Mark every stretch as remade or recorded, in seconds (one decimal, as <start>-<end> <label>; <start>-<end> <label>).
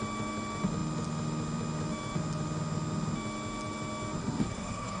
0.0-4.2 recorded; 4.2-5.0 remade